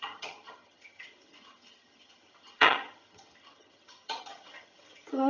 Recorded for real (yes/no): no